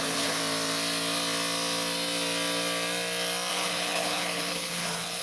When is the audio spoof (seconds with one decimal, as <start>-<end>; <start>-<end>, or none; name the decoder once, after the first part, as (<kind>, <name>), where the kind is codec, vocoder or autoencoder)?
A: 0.0-0.4 (codec, HILCodec); 3.5-5.2